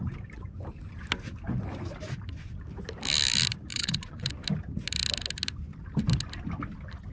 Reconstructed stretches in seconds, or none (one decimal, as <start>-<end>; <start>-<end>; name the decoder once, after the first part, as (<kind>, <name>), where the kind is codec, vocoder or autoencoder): 3.7-4.3 (vocoder, Vocos)